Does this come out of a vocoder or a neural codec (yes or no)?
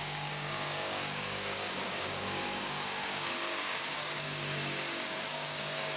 yes